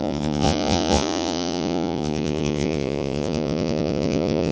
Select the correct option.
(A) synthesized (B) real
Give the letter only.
A